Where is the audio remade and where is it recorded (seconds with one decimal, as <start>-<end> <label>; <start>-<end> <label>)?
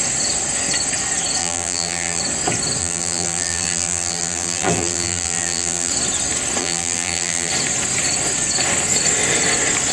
0.0-1.4 recorded; 1.4-2.2 remade; 2.2-2.8 recorded; 2.8-5.9 remade; 5.9-6.6 recorded; 6.6-7.5 remade; 7.5-9.9 recorded